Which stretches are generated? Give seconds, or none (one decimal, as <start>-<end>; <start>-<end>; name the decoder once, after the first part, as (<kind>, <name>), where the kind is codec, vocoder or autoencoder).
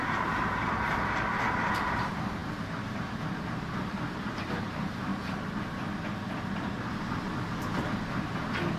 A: 0.0-5.1 (vocoder, BigVGAN v2)